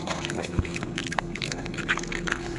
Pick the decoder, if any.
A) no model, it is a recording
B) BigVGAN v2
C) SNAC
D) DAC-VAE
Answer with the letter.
C